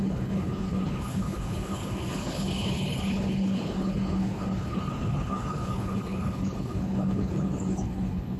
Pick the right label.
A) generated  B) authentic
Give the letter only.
A